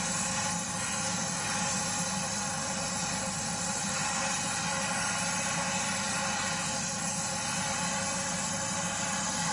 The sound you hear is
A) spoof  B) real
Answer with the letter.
B